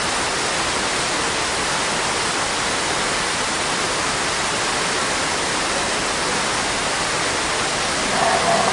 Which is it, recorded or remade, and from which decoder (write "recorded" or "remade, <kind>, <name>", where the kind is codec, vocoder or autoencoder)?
recorded